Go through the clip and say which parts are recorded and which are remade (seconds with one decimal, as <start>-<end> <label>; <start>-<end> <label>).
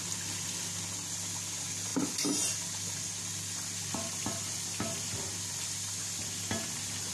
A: 0.0-7.1 recorded